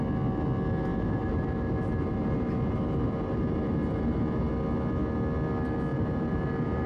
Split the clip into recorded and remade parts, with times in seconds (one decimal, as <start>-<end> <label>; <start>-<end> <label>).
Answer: 0.0-0.9 recorded; 0.9-4.5 remade; 4.5-5.9 recorded; 5.9-6.9 remade